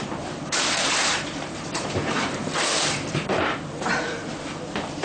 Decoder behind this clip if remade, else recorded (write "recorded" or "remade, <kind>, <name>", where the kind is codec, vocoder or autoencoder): remade, vocoder, BigVGAN v2